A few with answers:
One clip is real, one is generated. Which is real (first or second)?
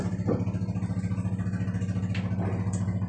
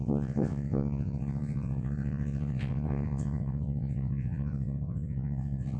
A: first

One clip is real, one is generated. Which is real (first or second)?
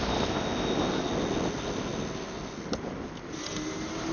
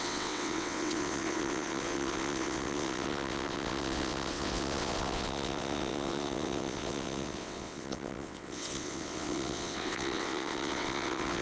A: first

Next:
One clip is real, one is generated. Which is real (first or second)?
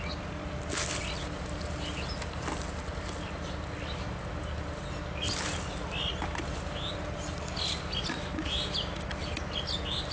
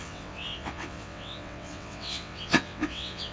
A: first